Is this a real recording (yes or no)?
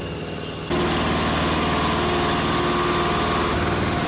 yes